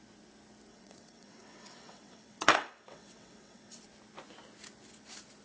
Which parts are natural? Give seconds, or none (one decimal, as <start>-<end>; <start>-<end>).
0.0-0.7; 3.8-5.4